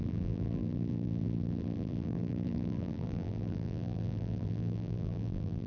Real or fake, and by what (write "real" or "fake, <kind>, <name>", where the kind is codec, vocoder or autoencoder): fake, vocoder, BigVGAN v2